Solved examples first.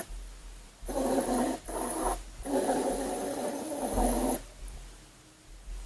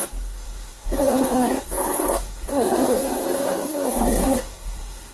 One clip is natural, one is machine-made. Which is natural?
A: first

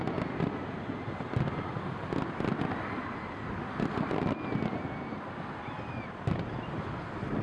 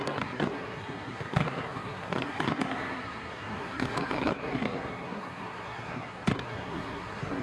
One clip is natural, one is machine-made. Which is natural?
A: first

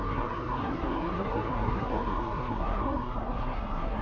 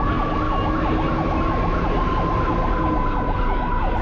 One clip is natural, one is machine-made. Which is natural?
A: second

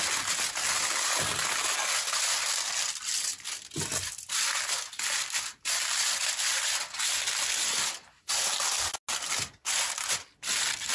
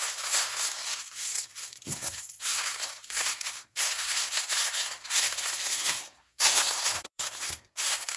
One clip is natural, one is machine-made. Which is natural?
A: first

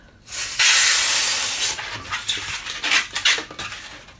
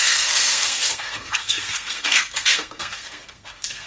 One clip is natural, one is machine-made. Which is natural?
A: first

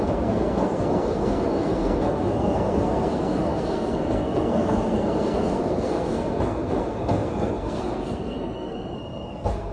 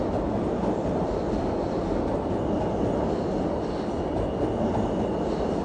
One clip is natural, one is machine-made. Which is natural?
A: second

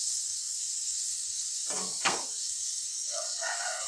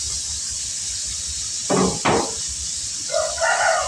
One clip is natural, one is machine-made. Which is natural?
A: second